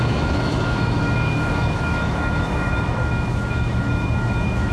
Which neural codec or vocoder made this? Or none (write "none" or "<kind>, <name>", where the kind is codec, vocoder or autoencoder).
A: autoencoder, DAC-VAE